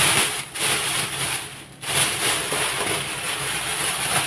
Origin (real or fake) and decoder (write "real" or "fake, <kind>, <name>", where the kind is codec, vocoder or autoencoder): real